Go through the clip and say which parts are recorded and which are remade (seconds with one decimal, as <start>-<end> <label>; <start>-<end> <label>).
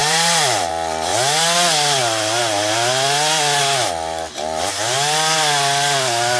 0.0-0.7 remade; 0.7-6.4 recorded